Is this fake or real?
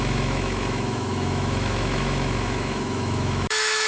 fake